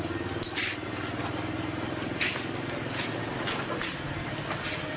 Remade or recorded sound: recorded